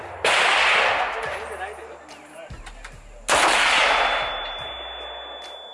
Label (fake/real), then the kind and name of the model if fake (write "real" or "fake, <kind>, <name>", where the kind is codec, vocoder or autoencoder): real